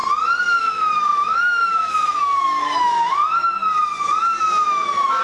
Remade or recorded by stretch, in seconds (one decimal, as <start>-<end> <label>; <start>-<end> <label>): 0.0-0.6 recorded; 0.6-3.2 remade; 3.2-4.4 recorded; 4.4-5.2 remade